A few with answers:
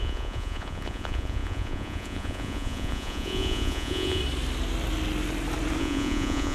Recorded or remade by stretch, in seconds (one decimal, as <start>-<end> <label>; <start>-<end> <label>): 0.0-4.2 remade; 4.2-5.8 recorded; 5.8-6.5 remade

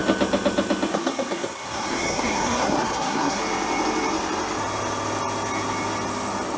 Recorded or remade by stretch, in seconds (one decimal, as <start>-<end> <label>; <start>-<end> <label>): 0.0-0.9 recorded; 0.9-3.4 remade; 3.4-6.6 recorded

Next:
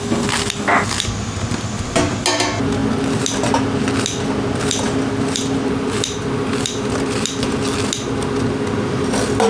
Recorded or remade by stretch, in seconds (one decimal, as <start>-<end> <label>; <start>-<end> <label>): 0.0-9.5 recorded

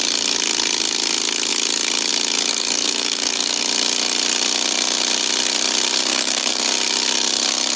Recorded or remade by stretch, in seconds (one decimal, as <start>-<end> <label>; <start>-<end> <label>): 0.0-2.5 recorded; 2.5-3.6 remade; 3.6-6.1 recorded; 6.1-6.6 remade; 6.6-7.8 recorded

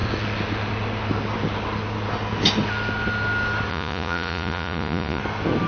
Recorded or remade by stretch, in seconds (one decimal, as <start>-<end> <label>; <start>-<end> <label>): 0.0-3.7 recorded; 3.7-5.2 remade; 5.2-5.7 recorded

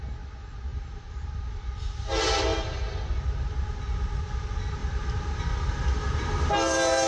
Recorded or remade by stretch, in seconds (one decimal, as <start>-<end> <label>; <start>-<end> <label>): 0.0-0.7 recorded; 0.7-1.6 remade; 1.6-4.8 recorded; 4.8-7.1 remade

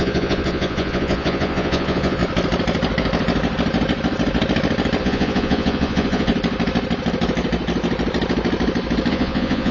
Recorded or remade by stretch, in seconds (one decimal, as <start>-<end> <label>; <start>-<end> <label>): 0.0-2.2 remade; 2.2-5.0 recorded; 5.0-6.3 remade; 6.3-9.1 recorded; 9.1-9.7 remade